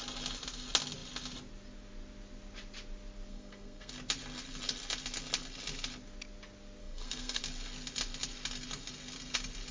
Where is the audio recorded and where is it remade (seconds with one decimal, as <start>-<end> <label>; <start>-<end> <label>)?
0.0-3.3 recorded; 3.3-3.9 remade; 3.9-6.8 recorded; 6.8-7.4 remade; 7.4-9.7 recorded